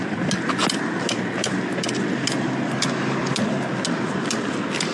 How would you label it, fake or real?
real